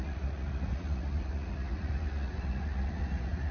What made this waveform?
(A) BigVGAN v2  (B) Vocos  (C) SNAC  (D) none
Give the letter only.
B